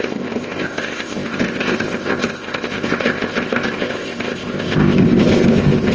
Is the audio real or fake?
fake